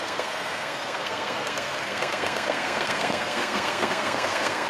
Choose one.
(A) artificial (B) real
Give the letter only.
A